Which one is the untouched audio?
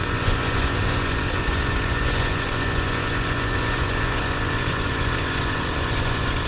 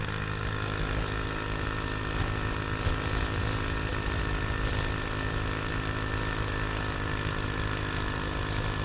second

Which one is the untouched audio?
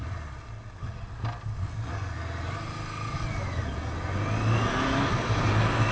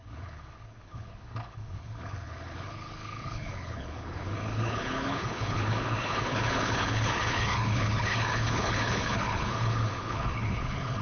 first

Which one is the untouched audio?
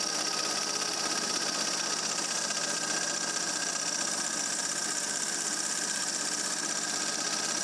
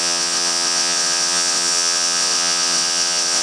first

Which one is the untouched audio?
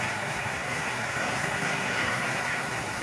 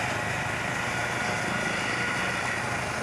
second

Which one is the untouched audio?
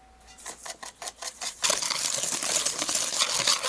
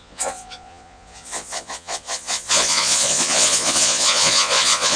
first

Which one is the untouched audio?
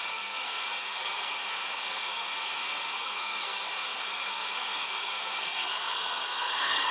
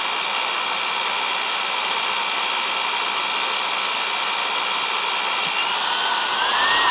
second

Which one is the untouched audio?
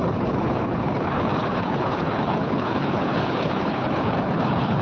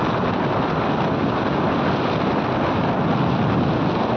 second